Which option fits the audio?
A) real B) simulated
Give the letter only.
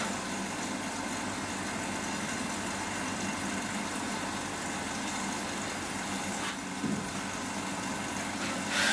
A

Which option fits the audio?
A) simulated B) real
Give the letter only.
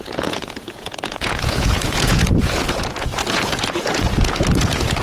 A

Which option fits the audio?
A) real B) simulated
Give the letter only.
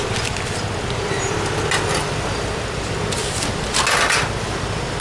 A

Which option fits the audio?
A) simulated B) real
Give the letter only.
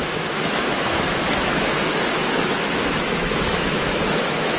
A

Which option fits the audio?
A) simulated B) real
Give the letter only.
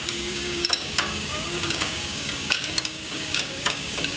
A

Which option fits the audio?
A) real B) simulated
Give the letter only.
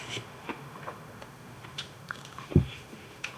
B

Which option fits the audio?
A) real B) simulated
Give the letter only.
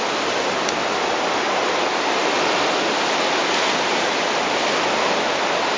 A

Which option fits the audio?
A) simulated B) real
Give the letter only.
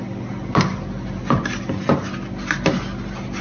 B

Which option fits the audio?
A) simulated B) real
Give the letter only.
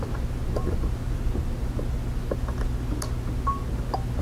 B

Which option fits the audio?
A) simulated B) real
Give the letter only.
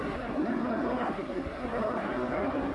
A